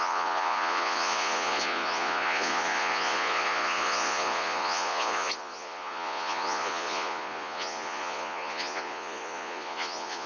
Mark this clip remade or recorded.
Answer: remade